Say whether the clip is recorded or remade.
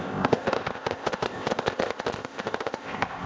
remade